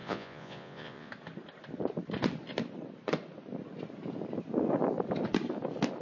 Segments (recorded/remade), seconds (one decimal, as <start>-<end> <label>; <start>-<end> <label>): 0.0-1.1 remade; 1.1-6.0 recorded